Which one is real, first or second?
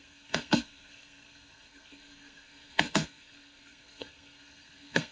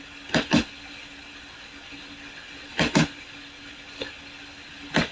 second